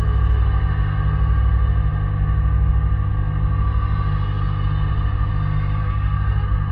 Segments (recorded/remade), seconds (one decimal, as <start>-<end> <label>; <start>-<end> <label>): 0.0-5.8 recorded; 5.8-6.7 remade